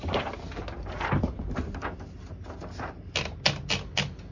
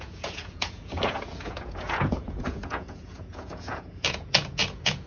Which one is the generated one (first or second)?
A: second